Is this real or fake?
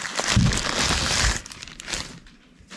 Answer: real